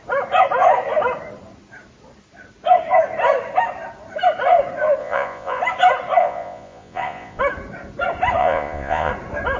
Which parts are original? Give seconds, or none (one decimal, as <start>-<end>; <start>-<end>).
0.0-5.0; 5.6-6.2; 7.4-8.4; 9.1-9.6